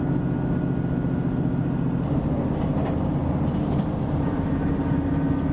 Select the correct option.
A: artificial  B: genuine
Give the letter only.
B